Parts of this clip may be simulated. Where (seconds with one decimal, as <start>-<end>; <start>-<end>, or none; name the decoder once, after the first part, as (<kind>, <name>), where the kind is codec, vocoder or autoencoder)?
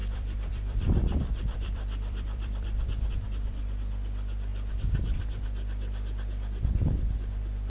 0.0-3.1 (vocoder, BigVGAN v2)